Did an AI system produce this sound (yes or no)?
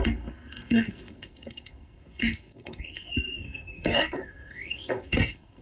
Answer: yes